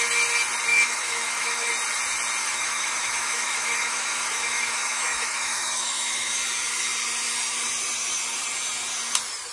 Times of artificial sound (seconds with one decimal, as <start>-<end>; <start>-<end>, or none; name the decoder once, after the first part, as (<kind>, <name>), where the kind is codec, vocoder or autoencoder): 0.7-1.7 (autoencoder, DAC-VAE); 2.4-6.3